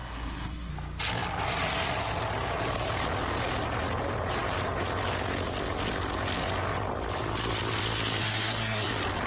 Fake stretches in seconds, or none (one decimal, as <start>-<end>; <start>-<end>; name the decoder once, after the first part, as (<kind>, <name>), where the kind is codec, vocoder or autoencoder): 0.0-0.7 (codec, SNAC); 8.2-8.9